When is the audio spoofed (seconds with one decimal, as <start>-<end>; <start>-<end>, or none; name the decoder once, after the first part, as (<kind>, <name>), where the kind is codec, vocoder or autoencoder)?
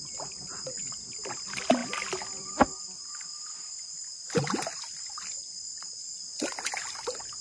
none